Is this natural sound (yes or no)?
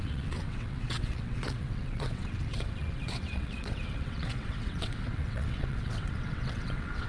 no